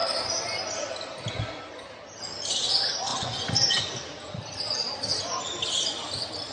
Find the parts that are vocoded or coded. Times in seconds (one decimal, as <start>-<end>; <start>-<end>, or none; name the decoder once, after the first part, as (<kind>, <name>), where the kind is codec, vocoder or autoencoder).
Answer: 3.1-3.8 (vocoder, Vocos)